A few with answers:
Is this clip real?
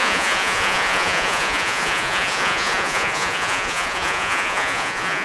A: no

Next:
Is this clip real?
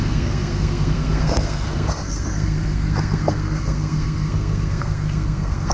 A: no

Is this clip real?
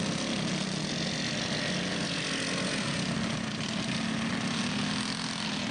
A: yes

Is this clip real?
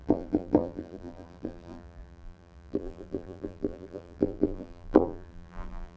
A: no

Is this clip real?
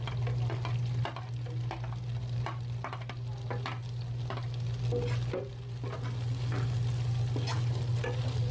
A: yes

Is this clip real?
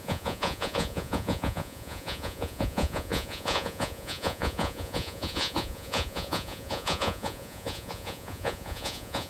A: no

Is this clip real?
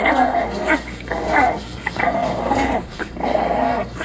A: no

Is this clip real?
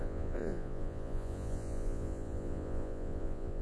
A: no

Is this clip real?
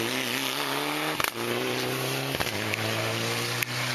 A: yes